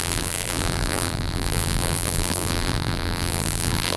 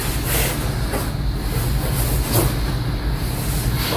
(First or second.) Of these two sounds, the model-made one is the first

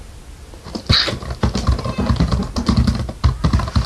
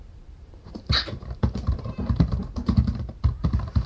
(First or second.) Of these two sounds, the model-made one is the second